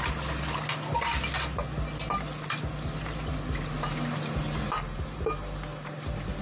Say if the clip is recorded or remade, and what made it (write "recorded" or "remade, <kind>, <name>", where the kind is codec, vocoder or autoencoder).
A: recorded